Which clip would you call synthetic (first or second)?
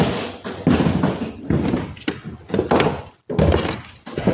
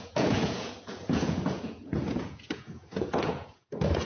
second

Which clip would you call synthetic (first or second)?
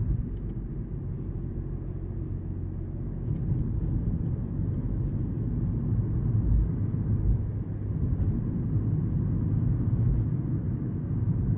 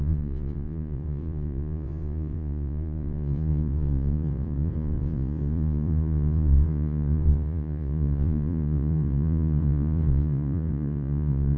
second